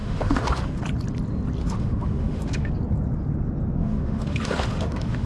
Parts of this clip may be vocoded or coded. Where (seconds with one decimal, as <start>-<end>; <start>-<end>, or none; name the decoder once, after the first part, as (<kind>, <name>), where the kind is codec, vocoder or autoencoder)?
0.0-0.8 (autoencoder, DAC-VAE); 1.6-2.7; 3.8-5.3